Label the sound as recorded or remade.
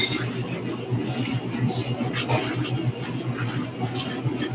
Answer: recorded